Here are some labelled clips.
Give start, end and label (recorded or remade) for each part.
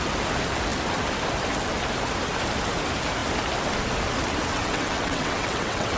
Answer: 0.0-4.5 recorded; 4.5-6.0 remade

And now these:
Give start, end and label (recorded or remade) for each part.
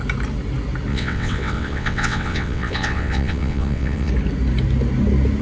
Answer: 0.0-0.9 recorded; 0.9-4.1 remade; 4.1-5.4 recorded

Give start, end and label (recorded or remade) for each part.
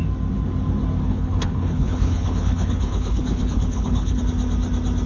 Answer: 0.0-1.1 recorded; 1.1-4.2 remade; 4.2-5.1 recorded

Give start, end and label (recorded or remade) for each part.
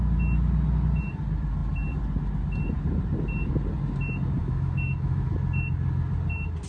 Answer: 0.0-4.4 recorded; 4.4-5.3 remade; 5.3-6.7 recorded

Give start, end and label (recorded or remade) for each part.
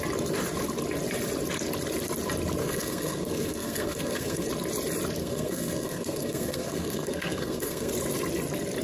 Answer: 0.0-2.6 recorded; 2.6-4.5 remade; 4.5-5.2 recorded; 5.2-7.9 remade; 7.9-8.8 recorded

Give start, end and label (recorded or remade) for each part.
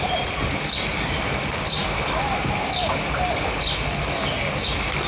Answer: 0.0-5.1 recorded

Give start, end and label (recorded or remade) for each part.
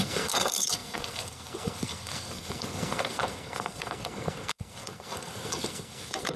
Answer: 0.0-6.4 remade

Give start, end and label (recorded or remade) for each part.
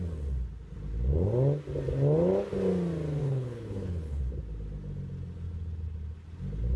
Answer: 0.0-3.2 recorded; 3.2-4.2 remade; 4.2-6.8 recorded